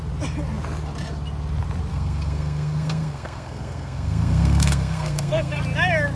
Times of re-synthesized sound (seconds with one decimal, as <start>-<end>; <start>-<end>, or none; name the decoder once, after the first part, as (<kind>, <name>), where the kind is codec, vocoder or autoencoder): 1.9-5.6 (codec, SNAC)